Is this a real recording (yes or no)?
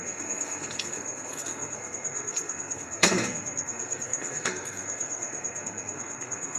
no